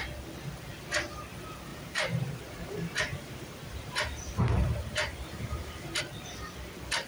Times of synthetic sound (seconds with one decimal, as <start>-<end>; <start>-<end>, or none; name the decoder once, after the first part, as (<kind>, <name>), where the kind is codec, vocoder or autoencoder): 1.7-6.0 (vocoder, BigVGAN v2)